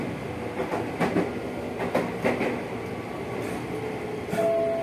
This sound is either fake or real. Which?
real